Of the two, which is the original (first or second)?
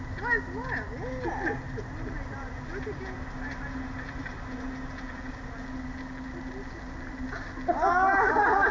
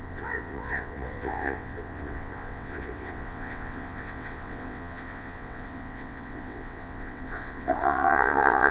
first